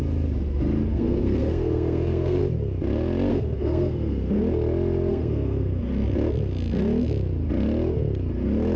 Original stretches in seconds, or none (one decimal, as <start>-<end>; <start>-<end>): 0.0-0.9; 2.4-3.3; 4.4-5.1; 5.9-8.8